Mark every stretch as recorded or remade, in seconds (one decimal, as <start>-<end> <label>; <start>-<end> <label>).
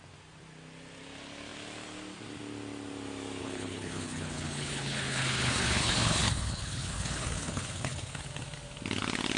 0.0-3.4 recorded; 3.4-8.3 remade; 8.3-9.4 recorded